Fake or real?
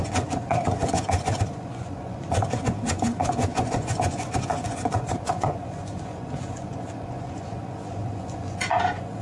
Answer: fake